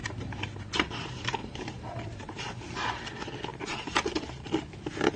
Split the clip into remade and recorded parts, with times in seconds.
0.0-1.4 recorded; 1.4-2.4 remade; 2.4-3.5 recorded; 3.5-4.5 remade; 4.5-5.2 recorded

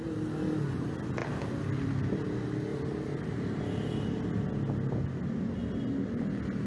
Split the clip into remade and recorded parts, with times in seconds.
0.0-1.2 recorded; 1.2-1.9 remade; 1.9-2.7 recorded; 2.7-3.6 remade; 3.6-6.7 recorded